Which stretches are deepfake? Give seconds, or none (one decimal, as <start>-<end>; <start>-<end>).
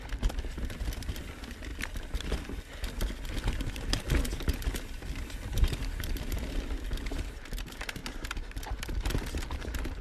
none